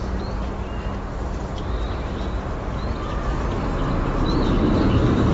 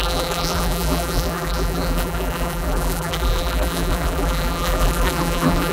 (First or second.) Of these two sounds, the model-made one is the second